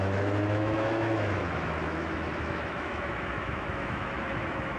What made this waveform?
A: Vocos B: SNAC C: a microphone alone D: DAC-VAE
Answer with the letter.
D